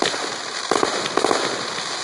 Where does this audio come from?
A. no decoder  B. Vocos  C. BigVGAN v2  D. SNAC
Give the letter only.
A